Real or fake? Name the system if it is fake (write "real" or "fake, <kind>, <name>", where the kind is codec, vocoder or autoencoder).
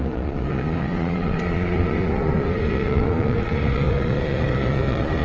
fake, vocoder, Vocos